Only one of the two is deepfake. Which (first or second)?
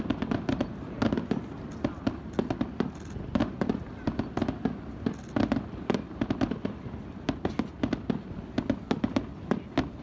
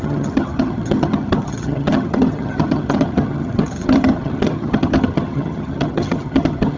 second